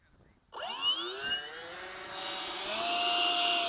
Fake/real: real